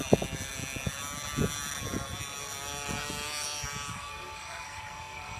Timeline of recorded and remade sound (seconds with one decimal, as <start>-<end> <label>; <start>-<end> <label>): 0.0-3.9 recorded; 3.9-5.4 remade